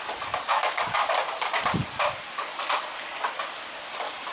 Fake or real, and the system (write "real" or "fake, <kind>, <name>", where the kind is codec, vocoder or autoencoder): real